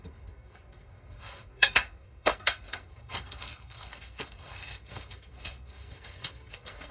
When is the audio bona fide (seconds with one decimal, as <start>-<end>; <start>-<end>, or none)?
none